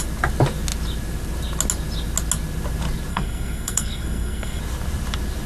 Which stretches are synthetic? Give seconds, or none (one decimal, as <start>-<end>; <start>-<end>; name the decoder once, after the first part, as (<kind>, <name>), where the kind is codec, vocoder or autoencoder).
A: 3.1-4.6 (codec, SNAC)